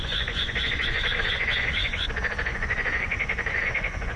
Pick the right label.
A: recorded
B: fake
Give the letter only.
B